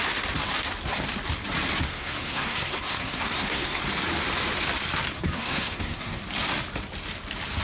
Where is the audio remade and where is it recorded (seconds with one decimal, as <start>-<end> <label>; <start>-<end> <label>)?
0.0-1.9 recorded; 1.9-3.8 remade; 3.8-5.1 recorded; 5.1-6.2 remade; 6.2-7.6 recorded